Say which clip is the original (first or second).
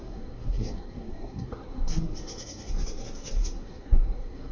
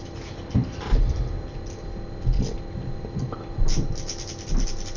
second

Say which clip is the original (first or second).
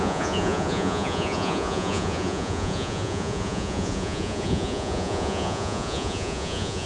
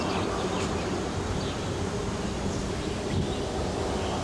second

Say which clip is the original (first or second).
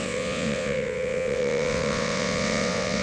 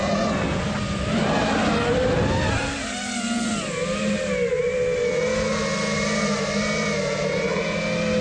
second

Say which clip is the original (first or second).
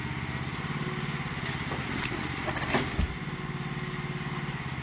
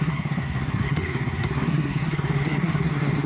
first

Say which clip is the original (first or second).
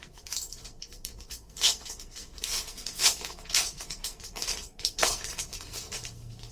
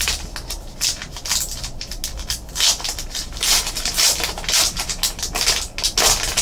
second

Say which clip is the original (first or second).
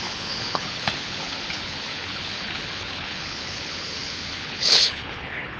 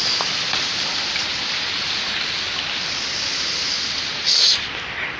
second